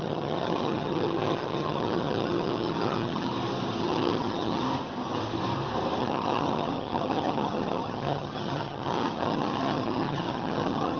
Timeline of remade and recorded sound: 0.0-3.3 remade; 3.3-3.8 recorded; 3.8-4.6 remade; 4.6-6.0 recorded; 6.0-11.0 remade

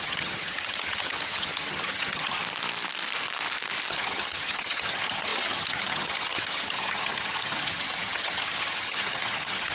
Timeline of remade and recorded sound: 0.0-2.4 remade; 2.4-3.9 recorded; 3.9-9.7 remade

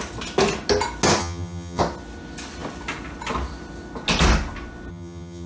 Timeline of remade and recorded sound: 0.0-1.2 recorded; 1.2-1.8 remade; 1.8-4.9 recorded; 4.9-5.5 remade

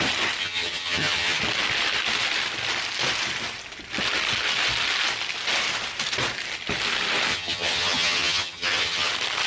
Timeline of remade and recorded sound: 0.0-0.4 recorded; 0.4-1.4 remade; 1.4-7.3 recorded; 7.3-9.1 remade; 9.1-9.5 recorded